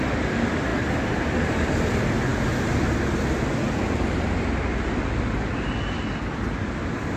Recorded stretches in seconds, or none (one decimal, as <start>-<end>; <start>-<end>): 0.0-7.2